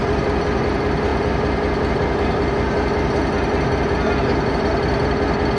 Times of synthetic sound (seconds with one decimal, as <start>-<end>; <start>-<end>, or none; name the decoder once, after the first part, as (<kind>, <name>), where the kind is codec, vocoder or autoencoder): none